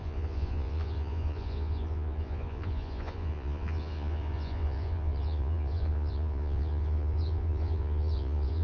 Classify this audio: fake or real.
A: fake